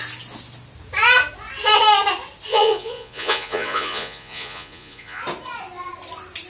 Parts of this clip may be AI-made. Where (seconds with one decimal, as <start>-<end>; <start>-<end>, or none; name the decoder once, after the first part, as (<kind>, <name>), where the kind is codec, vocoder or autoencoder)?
2.5-5.2 (vocoder, Vocos)